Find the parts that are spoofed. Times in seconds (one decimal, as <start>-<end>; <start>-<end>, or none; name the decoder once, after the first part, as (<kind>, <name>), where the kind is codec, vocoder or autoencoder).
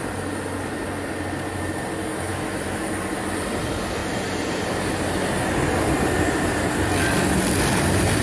2.3-2.8 (autoencoder, DAC-VAE)